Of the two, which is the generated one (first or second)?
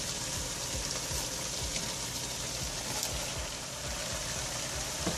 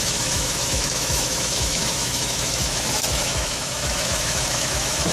second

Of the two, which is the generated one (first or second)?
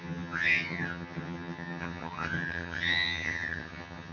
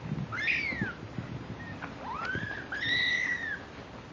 first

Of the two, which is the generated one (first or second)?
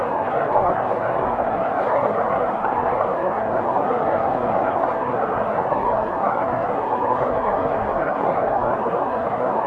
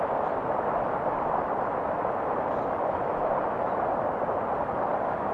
first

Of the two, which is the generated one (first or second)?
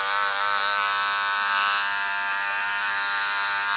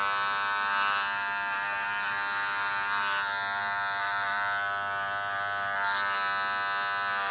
first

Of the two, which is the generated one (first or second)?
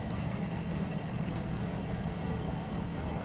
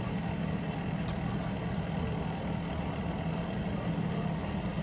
first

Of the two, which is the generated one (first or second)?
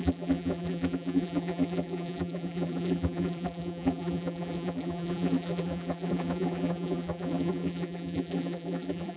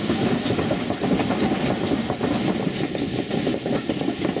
first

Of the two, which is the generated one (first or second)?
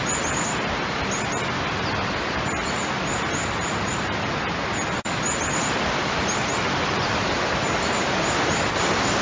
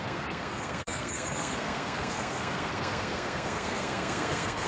second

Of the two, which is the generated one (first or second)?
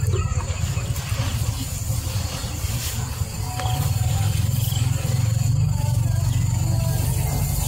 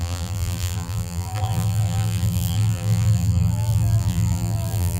second